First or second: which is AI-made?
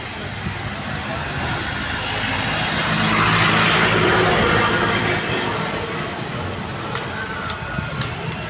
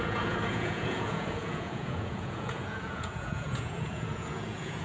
second